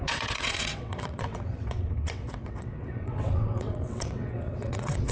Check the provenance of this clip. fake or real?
fake